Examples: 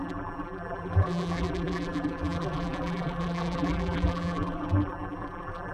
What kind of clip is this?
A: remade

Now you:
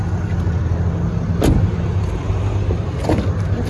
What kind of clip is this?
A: recorded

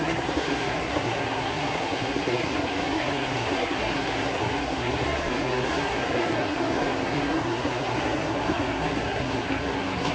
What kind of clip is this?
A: remade